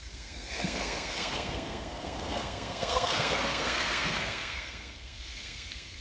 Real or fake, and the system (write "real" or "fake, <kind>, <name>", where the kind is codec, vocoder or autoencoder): fake, codec, SNAC